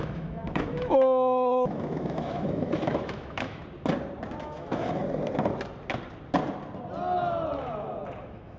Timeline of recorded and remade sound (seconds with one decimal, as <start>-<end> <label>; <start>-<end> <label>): 0.0-3.6 remade; 3.6-4.4 recorded; 4.4-5.0 remade; 5.0-8.2 recorded; 8.2-8.6 remade